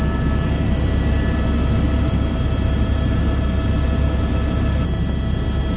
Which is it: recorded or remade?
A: recorded